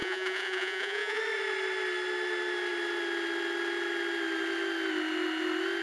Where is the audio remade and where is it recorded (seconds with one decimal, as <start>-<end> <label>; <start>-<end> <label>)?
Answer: 0.0-1.2 remade; 1.2-5.8 recorded